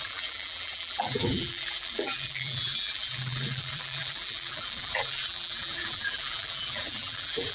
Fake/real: fake